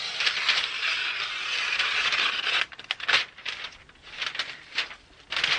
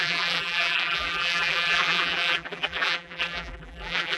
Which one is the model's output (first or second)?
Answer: second